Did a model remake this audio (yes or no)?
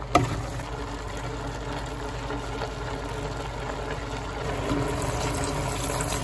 no